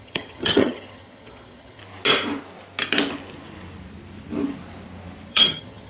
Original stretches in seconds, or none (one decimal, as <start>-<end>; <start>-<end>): 1.8-5.3